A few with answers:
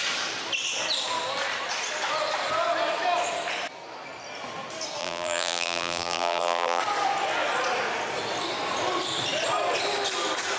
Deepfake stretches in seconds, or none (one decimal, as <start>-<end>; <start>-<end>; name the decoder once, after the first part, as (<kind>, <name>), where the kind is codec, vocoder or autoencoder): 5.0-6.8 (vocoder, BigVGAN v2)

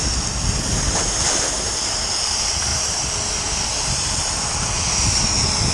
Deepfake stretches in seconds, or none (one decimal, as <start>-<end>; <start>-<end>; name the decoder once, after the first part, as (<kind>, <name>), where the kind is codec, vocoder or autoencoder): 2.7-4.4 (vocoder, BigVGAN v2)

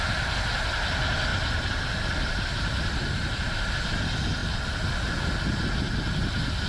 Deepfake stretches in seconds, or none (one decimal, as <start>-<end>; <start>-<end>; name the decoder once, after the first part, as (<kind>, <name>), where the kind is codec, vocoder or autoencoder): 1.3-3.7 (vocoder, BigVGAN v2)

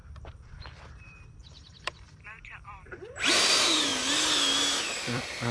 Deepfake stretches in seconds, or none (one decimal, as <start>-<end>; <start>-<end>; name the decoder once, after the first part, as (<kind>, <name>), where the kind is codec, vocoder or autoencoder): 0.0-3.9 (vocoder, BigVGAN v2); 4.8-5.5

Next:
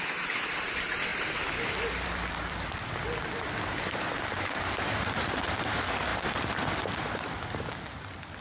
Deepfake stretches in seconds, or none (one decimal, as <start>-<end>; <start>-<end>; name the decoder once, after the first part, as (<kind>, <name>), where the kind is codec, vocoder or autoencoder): 0.0-8.4 (vocoder, BigVGAN v2)

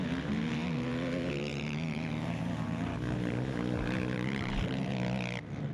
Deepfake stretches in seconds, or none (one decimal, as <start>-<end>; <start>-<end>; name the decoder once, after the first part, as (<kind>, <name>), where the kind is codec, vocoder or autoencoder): 1.5-4.9 (vocoder, BigVGAN v2)

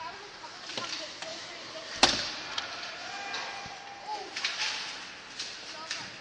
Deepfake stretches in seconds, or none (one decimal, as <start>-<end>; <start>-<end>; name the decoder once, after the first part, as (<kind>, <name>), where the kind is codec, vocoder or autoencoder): 1.3-2.1 (vocoder, BigVGAN v2)